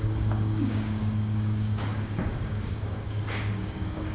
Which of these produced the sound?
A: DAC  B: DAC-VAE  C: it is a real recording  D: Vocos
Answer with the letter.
A